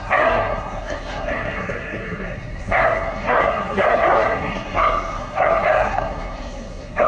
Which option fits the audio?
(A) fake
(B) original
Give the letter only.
A